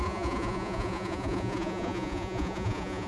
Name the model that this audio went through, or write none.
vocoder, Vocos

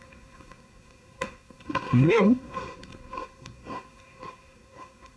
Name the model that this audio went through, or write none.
codec, SNAC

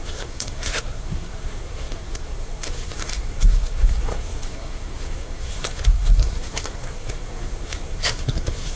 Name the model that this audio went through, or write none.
codec, SNAC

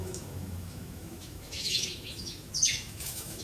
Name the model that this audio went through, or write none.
autoencoder, DAC-VAE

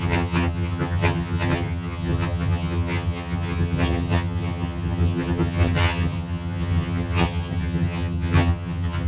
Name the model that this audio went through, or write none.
vocoder, HiFi-GAN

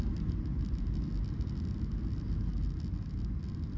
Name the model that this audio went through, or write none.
none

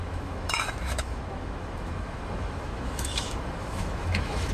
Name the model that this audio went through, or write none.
autoencoder, DAC-VAE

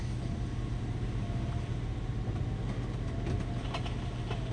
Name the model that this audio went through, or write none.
none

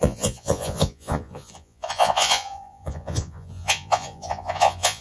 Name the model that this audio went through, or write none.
vocoder, Vocos